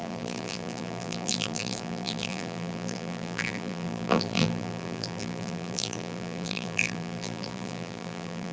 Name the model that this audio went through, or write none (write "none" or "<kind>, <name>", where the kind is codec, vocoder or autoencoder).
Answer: vocoder, BigVGAN v2